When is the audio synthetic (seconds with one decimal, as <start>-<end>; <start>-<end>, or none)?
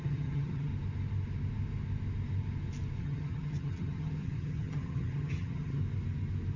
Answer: 0.0-0.7; 3.0-5.8